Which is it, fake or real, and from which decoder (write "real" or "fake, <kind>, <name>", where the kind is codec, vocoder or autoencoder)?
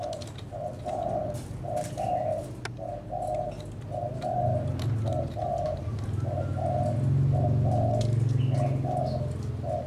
real